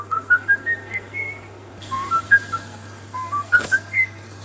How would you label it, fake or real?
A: fake